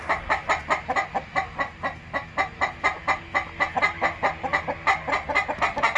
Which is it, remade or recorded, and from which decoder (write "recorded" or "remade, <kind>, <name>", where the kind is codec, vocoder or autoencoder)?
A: recorded